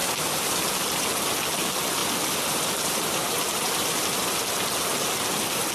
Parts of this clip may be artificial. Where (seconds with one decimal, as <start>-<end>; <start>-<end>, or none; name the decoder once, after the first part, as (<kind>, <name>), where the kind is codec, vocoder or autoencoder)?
0.0-1.2 (vocoder, BigVGAN v2); 2.0-4.4